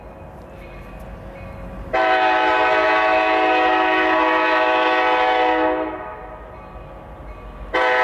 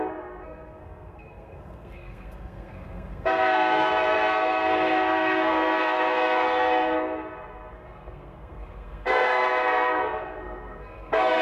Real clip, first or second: first